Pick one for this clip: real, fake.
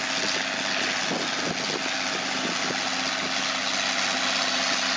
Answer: real